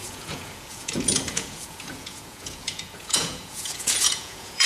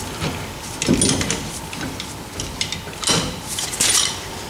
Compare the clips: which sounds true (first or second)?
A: second